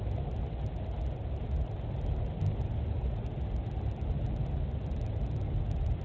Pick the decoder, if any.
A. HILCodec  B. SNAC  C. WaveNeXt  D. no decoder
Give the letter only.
D